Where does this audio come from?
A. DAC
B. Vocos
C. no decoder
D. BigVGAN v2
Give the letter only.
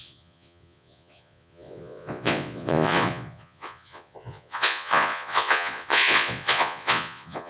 B